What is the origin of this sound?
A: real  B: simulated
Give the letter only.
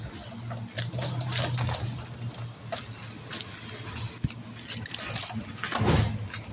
A